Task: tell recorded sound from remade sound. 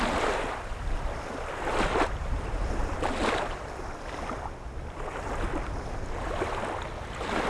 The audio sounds recorded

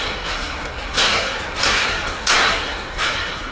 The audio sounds remade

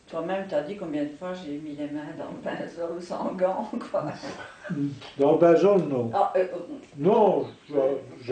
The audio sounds recorded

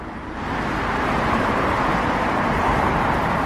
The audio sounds remade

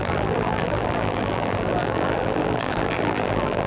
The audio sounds remade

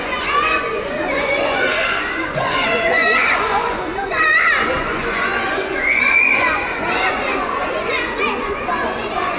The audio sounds remade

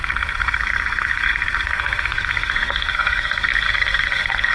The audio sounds remade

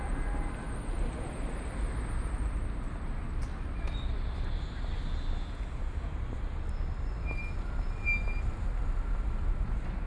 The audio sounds recorded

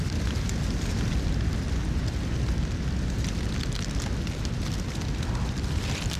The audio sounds recorded